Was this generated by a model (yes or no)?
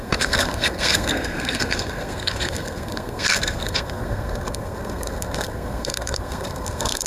yes